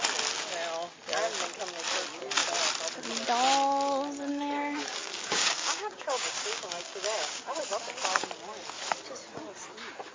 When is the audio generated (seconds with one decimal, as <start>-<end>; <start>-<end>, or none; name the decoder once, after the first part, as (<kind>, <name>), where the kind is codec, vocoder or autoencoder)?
4.3-7.6 (codec, DAC)